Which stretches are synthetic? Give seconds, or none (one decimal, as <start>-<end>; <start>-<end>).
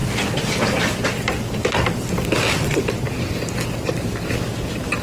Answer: none